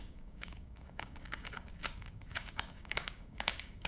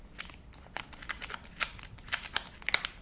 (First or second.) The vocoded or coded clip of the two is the first